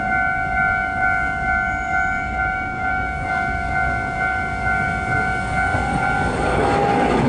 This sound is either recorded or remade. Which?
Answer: remade